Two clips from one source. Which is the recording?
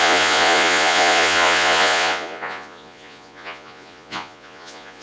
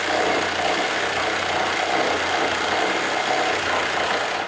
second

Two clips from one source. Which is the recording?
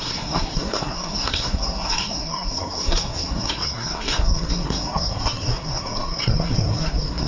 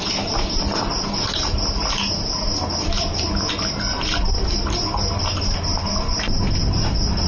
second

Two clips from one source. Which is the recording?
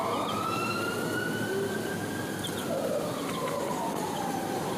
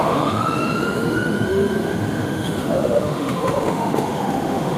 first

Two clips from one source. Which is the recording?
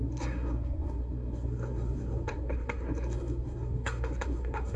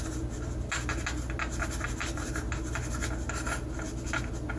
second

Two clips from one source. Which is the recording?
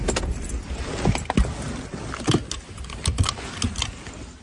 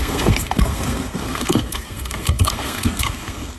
first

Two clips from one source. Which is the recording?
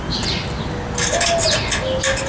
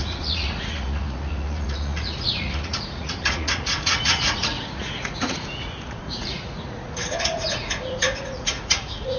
first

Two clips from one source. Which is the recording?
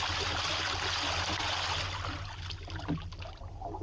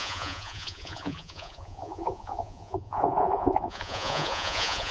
first